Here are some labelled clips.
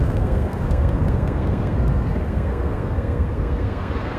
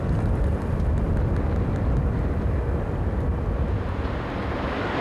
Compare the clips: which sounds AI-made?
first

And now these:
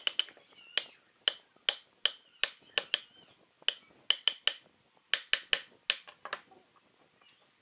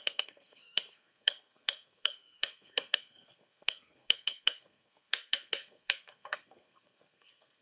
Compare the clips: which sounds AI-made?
second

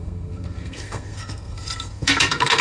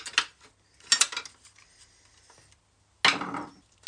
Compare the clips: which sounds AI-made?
first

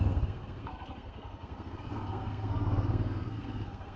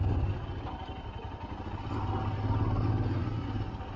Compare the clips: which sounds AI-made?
first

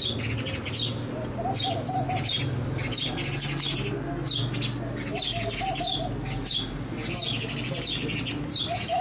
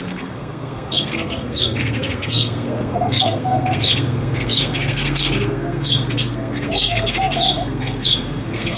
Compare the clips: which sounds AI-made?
second